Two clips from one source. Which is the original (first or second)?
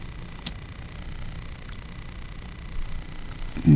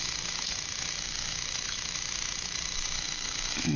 first